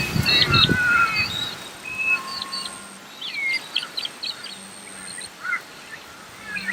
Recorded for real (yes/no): yes